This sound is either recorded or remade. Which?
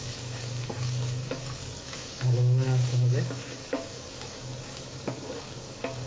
remade